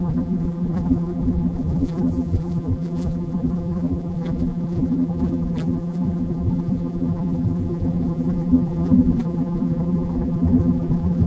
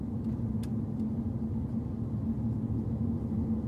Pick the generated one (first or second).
first